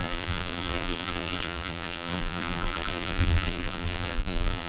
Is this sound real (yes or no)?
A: no